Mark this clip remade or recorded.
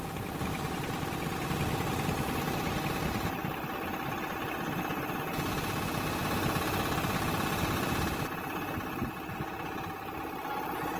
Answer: recorded